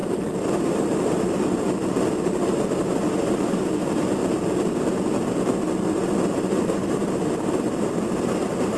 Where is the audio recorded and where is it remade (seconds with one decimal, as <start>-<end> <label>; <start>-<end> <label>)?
0.0-4.2 remade; 4.2-6.4 recorded; 6.4-8.8 remade